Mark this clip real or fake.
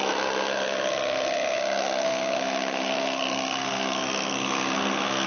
fake